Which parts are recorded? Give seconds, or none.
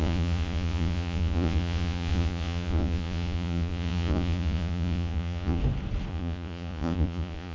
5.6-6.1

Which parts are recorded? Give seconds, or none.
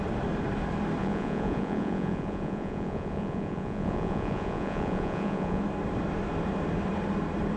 0.0-1.0; 5.6-7.6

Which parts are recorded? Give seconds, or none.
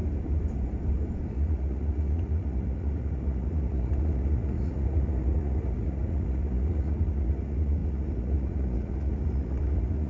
0.0-1.3